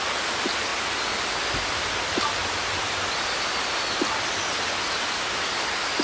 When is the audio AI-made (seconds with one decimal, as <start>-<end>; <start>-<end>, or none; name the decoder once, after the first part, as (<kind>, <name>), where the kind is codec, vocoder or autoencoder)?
none